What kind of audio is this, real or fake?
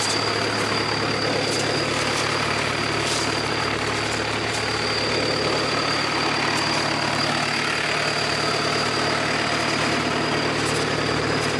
real